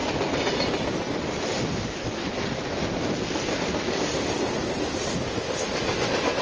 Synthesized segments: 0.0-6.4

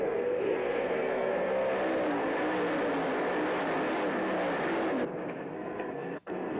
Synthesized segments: 0.0-1.5; 5.5-6.6

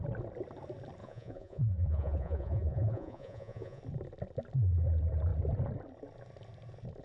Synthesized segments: 1.0-3.8